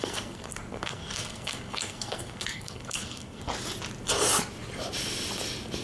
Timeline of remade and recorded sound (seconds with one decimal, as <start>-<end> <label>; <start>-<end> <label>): 0.0-3.5 remade; 3.5-5.8 recorded